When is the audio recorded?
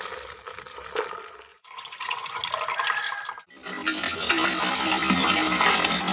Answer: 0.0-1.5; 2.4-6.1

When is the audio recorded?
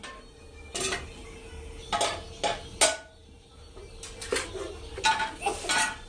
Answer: 0.0-6.1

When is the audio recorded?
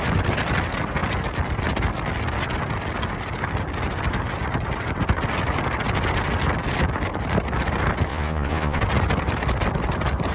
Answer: 0.0-8.1; 8.8-10.3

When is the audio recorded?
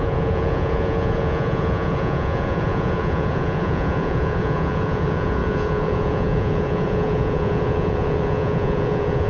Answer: none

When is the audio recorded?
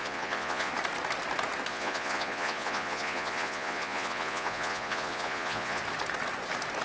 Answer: 0.7-1.7; 5.8-6.8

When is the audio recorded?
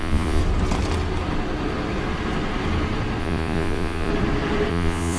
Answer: 0.4-3.2; 4.1-4.7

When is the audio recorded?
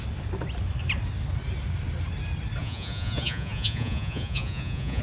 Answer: 0.0-2.6